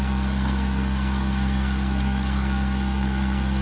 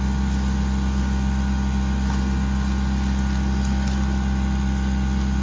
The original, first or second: second